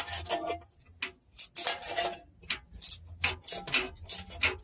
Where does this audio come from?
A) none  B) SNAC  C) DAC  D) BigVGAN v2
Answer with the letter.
A